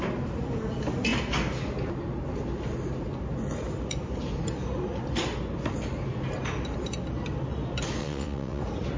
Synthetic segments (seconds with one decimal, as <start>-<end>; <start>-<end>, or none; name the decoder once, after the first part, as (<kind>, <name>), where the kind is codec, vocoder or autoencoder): 8.0-8.6 (vocoder, WaveNeXt)